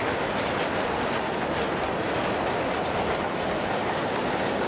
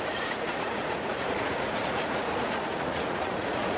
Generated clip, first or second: second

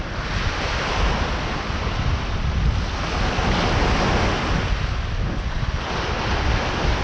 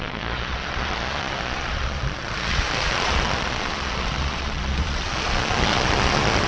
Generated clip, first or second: second